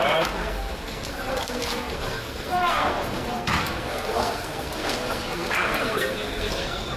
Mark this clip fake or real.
fake